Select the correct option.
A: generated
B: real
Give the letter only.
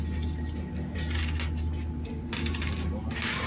B